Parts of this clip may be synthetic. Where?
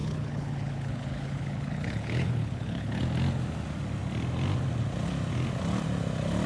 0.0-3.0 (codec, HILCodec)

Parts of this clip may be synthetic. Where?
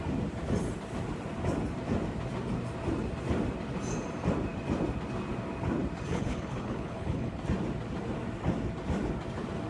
6.1-7.4 (codec, HILCodec)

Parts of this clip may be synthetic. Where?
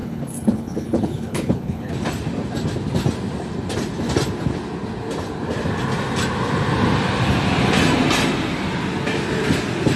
0.0-1.9 (codec, HILCodec)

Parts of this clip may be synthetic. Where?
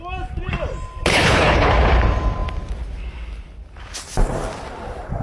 1.1-1.7 (codec, HILCodec)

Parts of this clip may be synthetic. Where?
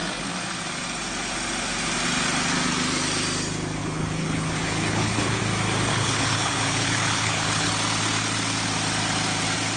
3.8-5.4 (codec, HILCodec); 5.9-7.7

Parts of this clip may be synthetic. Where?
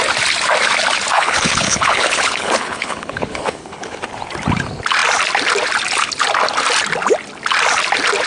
1.1-4.0 (codec, HILCodec)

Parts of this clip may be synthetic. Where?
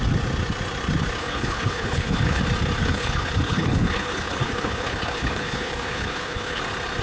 1.2-2.4 (codec, HILCodec); 2.8-6.6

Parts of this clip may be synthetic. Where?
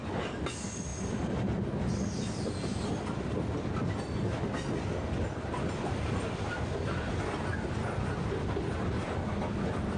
none